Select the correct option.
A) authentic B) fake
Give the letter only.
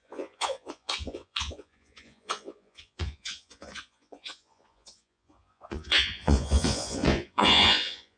B